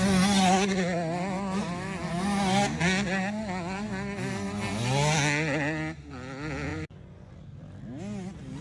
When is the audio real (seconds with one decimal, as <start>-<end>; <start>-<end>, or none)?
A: 0.0-6.7; 7.3-8.6